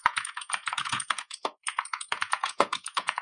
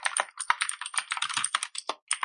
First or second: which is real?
second